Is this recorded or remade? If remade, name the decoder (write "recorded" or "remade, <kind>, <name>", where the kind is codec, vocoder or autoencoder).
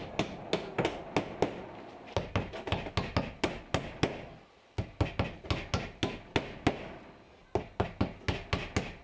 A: recorded